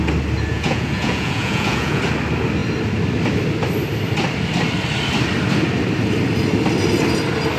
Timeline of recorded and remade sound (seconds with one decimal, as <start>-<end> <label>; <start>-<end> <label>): 0.0-0.5 recorded; 0.5-2.0 remade; 2.0-7.6 recorded